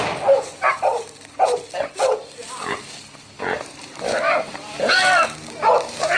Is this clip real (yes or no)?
yes